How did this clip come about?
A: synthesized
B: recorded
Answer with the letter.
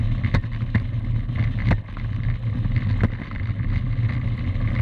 B